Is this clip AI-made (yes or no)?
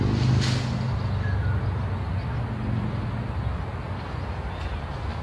no